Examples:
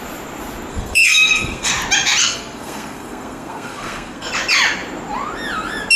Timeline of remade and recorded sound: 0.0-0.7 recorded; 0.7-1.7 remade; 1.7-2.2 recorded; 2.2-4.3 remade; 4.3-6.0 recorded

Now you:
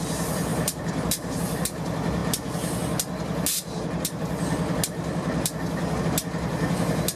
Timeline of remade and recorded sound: 0.0-0.5 recorded; 0.5-1.4 remade; 1.4-7.2 recorded

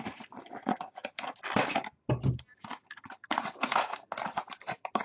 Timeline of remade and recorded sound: 0.0-5.0 recorded

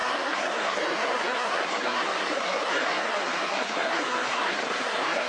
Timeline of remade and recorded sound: 0.0-5.3 remade